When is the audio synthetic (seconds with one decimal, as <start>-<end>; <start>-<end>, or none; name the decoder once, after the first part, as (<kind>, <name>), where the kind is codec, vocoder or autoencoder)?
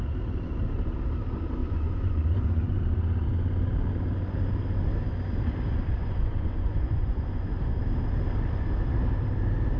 1.6-2.8 (vocoder, Vocos); 6.0-7.8